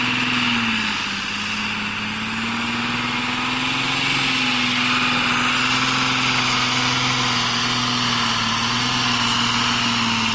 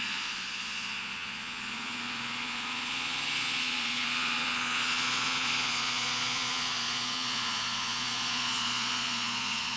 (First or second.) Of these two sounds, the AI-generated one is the second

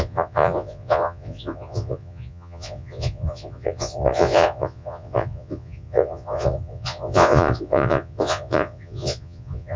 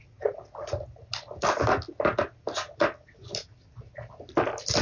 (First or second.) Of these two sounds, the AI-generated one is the first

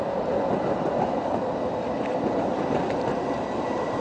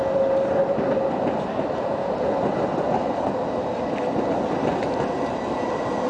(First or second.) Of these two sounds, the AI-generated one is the first